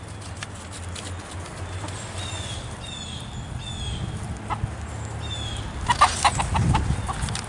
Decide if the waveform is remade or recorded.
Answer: recorded